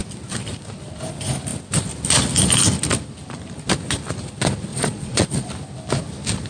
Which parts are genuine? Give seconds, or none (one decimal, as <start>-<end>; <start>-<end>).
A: 0.0-4.7; 5.5-6.5